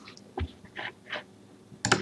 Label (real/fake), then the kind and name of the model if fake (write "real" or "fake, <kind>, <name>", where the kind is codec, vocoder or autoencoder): real